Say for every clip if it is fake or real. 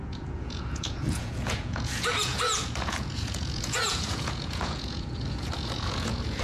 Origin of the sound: fake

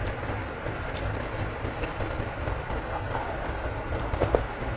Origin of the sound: real